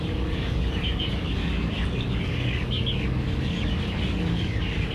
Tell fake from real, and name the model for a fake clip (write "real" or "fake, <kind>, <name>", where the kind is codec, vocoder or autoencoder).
fake, codec, DAC